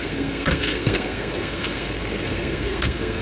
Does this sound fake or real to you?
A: fake